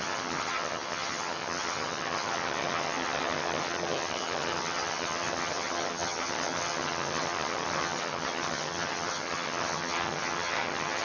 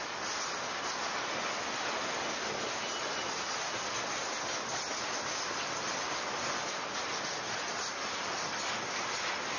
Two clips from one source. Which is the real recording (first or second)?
second